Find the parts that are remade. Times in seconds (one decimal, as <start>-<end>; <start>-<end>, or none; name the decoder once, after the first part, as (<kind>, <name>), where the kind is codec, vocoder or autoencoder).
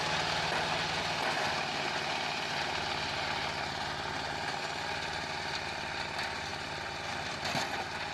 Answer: none